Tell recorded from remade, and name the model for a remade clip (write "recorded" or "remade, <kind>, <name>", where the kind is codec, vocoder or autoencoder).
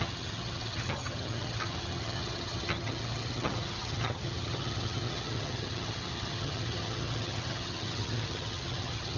remade, vocoder, HiFi-GAN